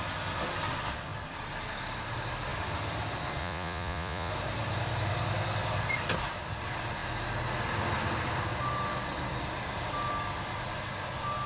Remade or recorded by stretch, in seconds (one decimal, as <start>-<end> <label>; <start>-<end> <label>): 0.0-3.4 recorded; 3.4-4.3 remade; 4.3-11.5 recorded